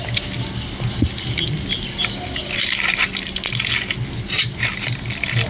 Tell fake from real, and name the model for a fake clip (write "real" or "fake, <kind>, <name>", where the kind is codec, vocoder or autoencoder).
real